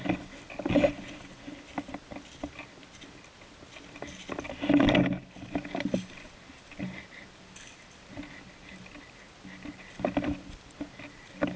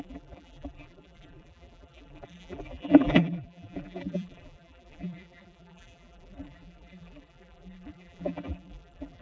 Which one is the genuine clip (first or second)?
first